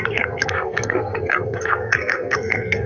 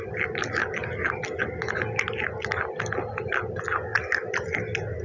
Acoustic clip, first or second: second